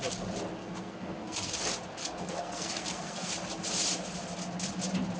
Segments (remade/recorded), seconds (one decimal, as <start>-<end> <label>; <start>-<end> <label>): 0.0-0.6 recorded; 0.6-1.5 remade; 1.5-2.0 recorded; 2.0-3.3 remade; 3.3-5.2 recorded